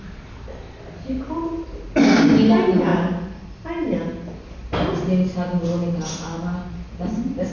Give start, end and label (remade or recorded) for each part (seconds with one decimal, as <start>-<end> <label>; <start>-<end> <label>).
0.0-7.5 recorded